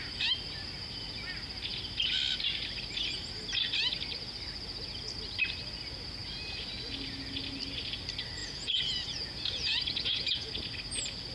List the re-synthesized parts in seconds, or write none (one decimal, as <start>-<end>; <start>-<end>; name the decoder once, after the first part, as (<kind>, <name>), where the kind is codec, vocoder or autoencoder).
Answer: 8.4-10.5 (vocoder, Vocos)